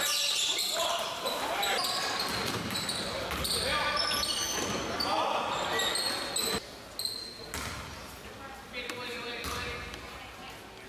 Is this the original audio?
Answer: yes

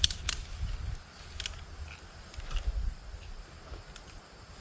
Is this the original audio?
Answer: yes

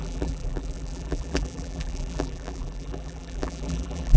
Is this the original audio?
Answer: no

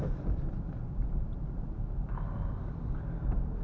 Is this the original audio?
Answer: no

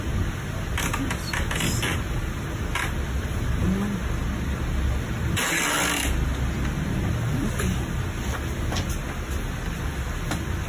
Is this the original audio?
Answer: yes